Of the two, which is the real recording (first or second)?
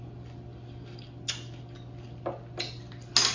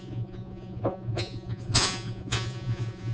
first